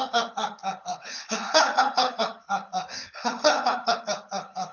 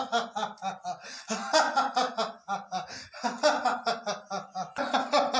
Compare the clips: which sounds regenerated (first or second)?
first